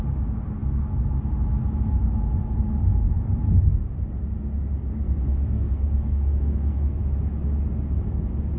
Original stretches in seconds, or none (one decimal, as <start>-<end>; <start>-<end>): 0.0-4.9; 7.0-8.6